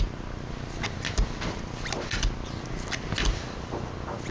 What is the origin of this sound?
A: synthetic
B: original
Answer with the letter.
B